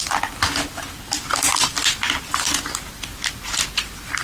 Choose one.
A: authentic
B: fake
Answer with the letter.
A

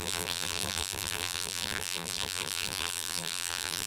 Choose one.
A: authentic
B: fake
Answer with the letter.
B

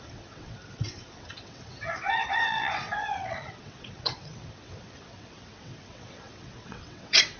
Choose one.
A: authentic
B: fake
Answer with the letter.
B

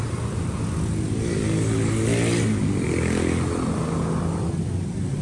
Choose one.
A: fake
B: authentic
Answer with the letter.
B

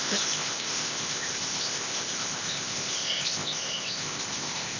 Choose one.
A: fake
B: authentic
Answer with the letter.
A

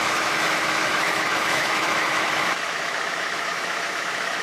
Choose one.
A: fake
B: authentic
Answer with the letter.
A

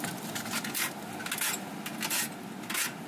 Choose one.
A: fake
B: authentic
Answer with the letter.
B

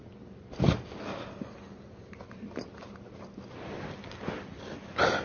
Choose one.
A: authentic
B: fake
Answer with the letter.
A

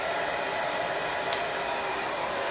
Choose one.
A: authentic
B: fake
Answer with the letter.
B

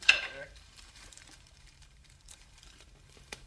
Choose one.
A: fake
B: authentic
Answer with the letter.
A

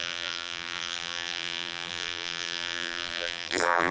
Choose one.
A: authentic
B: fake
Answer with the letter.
B